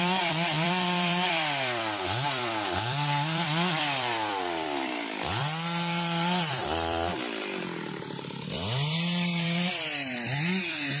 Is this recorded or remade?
remade